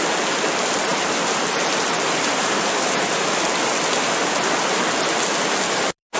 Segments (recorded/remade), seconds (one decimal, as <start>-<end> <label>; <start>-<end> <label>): 0.0-6.2 recorded